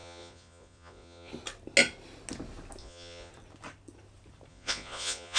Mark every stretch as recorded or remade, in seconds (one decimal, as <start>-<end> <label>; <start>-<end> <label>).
0.0-1.3 remade; 1.3-2.8 recorded; 2.8-3.3 remade; 3.3-4.5 recorded; 4.5-5.4 remade